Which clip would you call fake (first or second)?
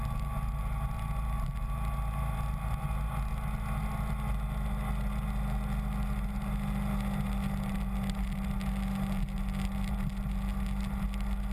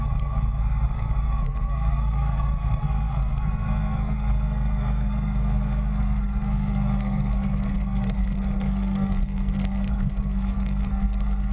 second